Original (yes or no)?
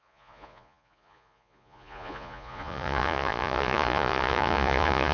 no